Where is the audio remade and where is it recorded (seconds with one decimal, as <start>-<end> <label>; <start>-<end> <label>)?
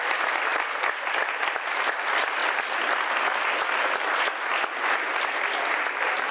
0.0-6.3 recorded